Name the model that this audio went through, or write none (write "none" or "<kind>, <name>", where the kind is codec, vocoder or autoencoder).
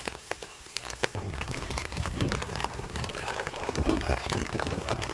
codec, SNAC